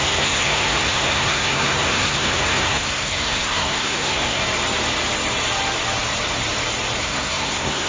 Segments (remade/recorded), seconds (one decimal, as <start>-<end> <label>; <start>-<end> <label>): 0.0-4.4 remade; 4.4-7.0 recorded; 7.0-7.9 remade